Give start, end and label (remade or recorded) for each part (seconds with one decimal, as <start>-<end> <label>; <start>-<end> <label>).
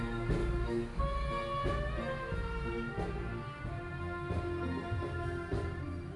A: 0.0-0.4 recorded; 0.4-1.0 remade; 1.0-6.2 recorded